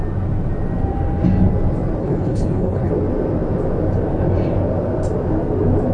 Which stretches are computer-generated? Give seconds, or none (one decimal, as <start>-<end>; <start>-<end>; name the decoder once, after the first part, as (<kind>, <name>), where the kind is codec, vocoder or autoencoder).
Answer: 2.0-2.9 (codec, HILCodec)